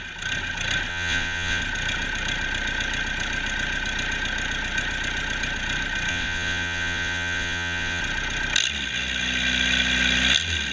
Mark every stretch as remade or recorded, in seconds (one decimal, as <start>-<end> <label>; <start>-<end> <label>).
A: 0.0-0.9 recorded; 0.9-1.6 remade; 1.6-6.1 recorded; 6.1-8.0 remade; 8.0-10.7 recorded